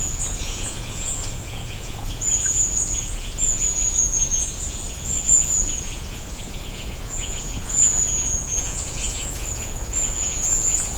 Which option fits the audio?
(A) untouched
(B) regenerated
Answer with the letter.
B